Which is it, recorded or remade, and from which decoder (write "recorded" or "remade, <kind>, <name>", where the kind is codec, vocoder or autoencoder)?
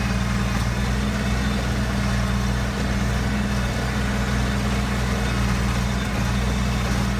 recorded